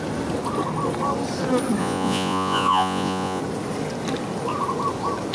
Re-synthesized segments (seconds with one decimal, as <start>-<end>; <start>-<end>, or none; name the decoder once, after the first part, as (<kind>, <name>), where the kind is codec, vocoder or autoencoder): 1.8-3.4 (vocoder, Vocos)